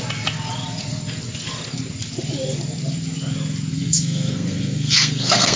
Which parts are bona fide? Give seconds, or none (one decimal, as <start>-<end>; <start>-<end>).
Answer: 0.0-3.7